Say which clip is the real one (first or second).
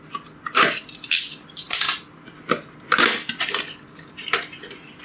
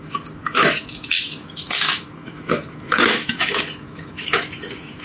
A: first